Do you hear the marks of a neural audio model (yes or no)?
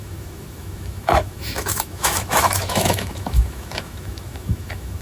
yes